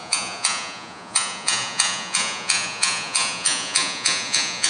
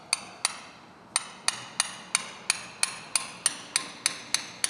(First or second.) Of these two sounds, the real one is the second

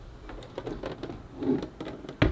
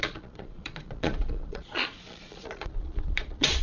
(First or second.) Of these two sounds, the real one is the first